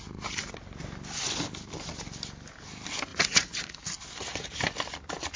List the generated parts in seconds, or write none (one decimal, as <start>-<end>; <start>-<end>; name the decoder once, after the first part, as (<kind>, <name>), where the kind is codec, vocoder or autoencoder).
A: 3.1-3.8 (vocoder, Vocos)